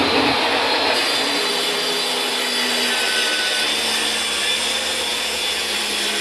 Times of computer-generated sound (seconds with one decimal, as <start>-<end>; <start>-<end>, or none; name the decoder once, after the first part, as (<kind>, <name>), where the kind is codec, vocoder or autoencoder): 5.1-5.8 (vocoder, Vocos)